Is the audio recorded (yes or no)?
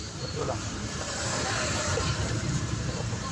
no